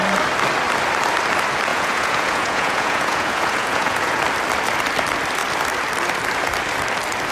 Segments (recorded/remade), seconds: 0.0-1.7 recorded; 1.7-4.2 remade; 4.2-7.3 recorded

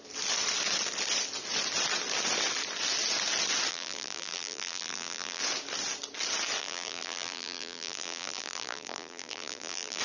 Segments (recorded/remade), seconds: 0.0-3.7 recorded; 3.7-5.4 remade; 5.4-6.6 recorded; 6.6-10.0 remade

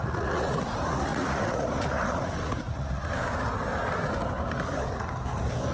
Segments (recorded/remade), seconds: 0.0-3.1 remade; 3.1-5.7 recorded

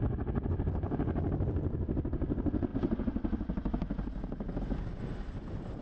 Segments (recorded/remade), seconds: 0.0-5.8 recorded

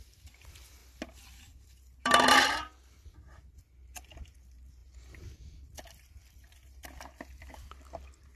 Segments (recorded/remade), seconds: 0.0-0.8 remade; 0.8-1.4 recorded; 1.4-8.4 remade

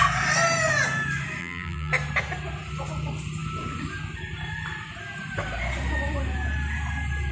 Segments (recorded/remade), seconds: 0.0-1.4 recorded; 1.4-1.9 remade; 1.9-7.3 recorded